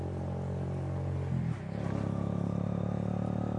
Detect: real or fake real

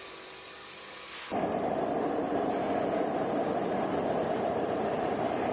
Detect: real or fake fake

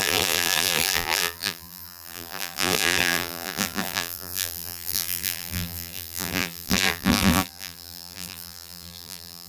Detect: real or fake fake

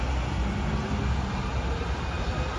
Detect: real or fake real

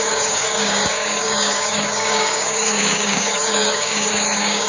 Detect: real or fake fake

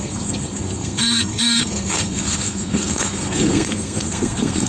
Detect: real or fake fake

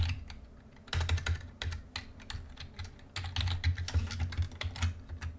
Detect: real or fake real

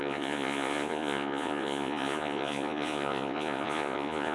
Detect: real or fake fake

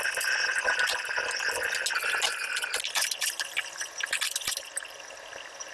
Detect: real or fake real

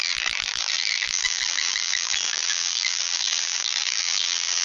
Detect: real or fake fake